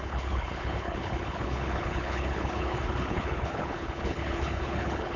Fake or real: fake